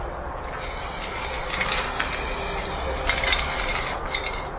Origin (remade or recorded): recorded